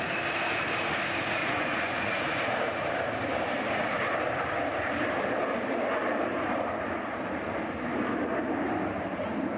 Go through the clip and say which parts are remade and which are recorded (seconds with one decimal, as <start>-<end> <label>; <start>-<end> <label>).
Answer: 0.0-1.4 recorded; 1.4-2.4 remade; 2.4-9.6 recorded